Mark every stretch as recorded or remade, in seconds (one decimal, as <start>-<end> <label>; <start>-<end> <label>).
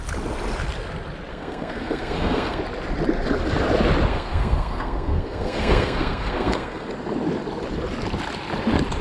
0.0-1.3 recorded; 1.3-2.6 remade; 2.6-4.1 recorded; 4.1-6.9 remade; 6.9-9.0 recorded